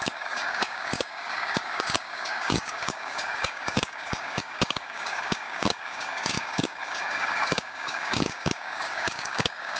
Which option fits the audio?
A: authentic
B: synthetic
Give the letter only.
B